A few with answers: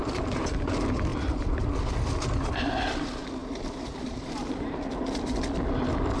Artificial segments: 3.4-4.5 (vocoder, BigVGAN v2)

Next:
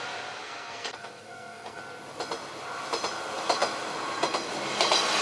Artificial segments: 0.4-1.8 (codec, SNAC)

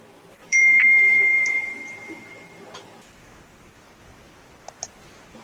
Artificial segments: 0.4-3.6 (vocoder, BigVGAN v2)

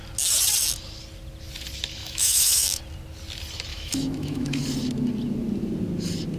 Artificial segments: 2.0-2.8 (autoencoder, DAC-VAE); 3.7-4.6

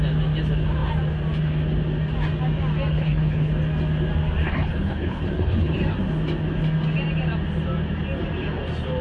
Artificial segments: 2.9-3.5 (codec, HILCodec); 4.4-5.8

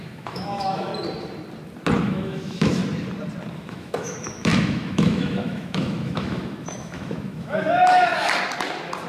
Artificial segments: 0.0-0.9 (autoencoder, DAC-VAE); 2.0-2.8; 3.5-8.1